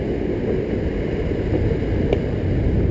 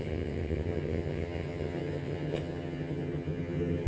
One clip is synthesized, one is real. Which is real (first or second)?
first